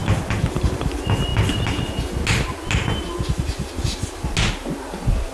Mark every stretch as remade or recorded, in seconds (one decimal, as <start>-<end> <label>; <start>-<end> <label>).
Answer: 0.0-5.3 recorded

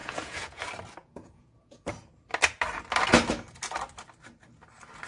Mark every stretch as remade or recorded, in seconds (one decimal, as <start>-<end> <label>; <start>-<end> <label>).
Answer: 0.0-0.6 remade; 0.6-1.0 recorded; 1.0-1.9 remade; 1.9-5.1 recorded

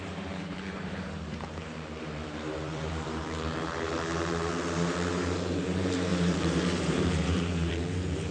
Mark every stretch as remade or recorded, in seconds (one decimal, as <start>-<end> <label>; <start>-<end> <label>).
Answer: 0.0-8.3 remade

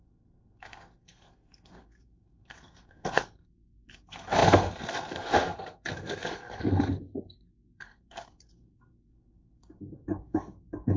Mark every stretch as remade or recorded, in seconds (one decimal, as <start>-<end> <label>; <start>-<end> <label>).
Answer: 0.0-11.0 remade